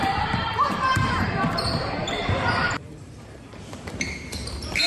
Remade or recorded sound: remade